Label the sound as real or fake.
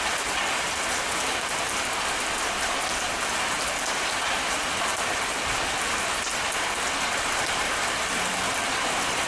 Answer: real